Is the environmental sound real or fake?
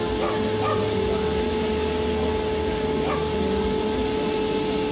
real